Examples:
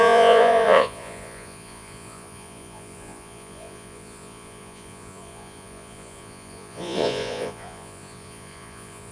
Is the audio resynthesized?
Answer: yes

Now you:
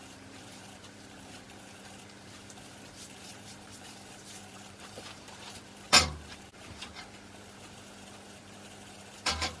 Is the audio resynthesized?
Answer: yes